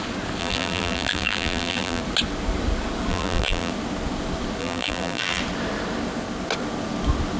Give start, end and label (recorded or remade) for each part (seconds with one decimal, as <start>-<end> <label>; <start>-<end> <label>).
0.0-0.4 recorded; 0.4-2.0 remade; 2.0-3.1 recorded; 3.1-3.7 remade; 3.7-4.6 recorded; 4.6-5.4 remade; 5.4-7.4 recorded